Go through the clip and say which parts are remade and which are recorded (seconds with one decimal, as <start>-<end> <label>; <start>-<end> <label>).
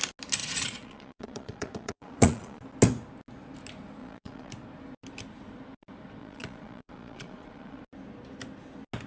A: 0.0-0.4 recorded; 0.4-2.6 remade; 2.6-4.0 recorded; 4.0-4.5 remade; 4.5-6.2 recorded; 6.2-7.8 remade; 7.8-9.1 recorded